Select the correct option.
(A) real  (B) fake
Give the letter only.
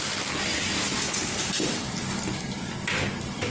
A